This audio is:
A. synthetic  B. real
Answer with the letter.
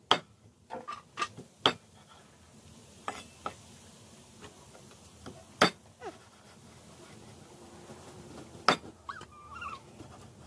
B